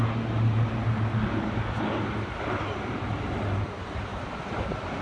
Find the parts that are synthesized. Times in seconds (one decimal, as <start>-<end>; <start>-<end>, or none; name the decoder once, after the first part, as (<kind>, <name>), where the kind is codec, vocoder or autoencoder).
none